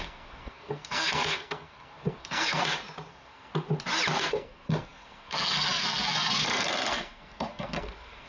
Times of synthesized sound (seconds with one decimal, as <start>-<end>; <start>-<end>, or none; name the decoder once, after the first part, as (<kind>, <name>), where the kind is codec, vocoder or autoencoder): 0.0-2.6 (codec, SNAC); 3.1-3.5; 4.2-8.3